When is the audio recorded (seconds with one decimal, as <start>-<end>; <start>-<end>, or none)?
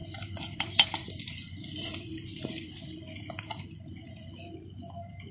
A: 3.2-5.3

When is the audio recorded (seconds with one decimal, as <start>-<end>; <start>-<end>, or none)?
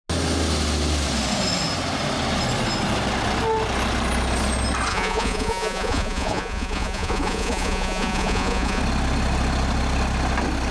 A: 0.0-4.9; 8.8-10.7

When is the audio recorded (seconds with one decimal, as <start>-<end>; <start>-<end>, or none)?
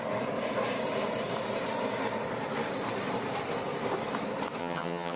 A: 0.0-4.6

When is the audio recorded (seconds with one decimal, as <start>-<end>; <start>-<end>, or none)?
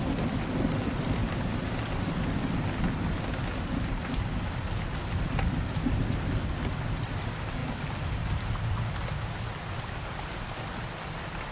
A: 0.0-11.5